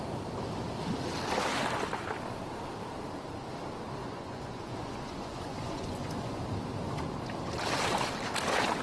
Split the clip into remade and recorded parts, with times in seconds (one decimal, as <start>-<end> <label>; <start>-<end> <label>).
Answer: 0.0-4.0 recorded; 4.0-6.4 remade; 6.4-8.8 recorded